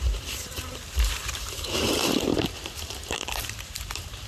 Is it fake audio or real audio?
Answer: fake